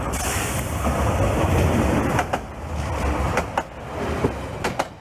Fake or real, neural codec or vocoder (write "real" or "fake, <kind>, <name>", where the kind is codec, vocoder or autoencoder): real